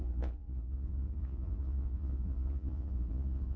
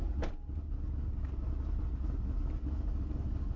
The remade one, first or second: first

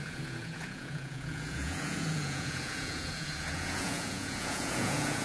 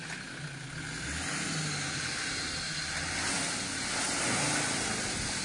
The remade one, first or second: first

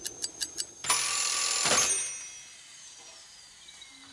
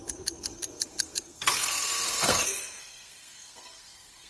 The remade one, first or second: second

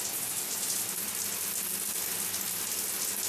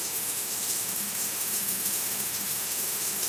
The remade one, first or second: second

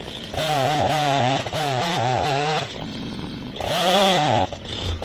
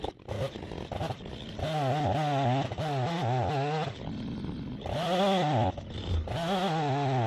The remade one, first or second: first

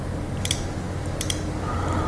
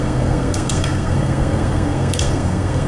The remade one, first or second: second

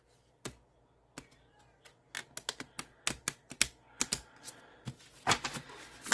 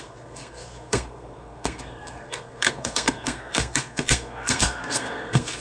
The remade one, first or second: second